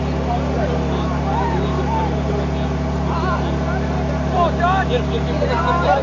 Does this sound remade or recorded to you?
recorded